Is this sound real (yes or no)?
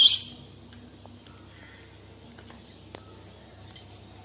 yes